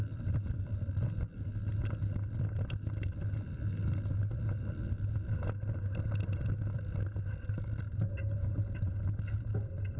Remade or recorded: recorded